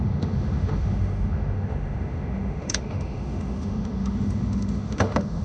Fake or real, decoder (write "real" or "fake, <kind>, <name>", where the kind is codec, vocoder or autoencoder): fake, autoencoder, DAC-VAE